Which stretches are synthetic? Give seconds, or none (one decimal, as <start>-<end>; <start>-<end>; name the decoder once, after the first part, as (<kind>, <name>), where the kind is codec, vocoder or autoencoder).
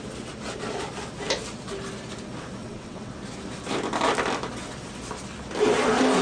2.6-3.1 (vocoder, WaveNeXt)